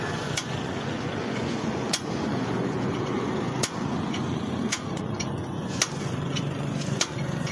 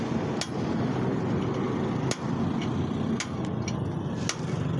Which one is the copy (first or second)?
first